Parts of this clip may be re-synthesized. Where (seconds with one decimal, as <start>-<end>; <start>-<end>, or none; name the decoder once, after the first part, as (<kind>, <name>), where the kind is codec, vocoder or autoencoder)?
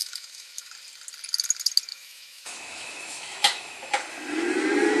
0.0-0.7 (autoencoder, DAC-VAE); 1.9-3.9